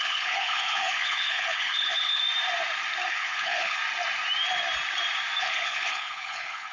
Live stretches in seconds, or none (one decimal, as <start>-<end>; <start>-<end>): 2.2-3.1; 3.8-5.4